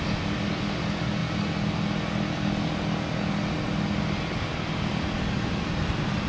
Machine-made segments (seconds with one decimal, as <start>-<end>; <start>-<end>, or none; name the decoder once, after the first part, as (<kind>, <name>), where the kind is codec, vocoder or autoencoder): none